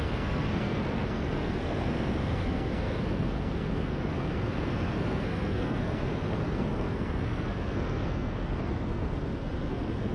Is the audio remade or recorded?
remade